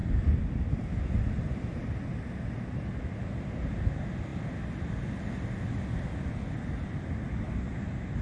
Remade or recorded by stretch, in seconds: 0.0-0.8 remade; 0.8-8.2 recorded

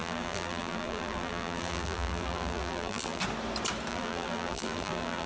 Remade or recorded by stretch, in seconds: 0.0-3.2 remade; 3.2-3.9 recorded; 3.9-5.3 remade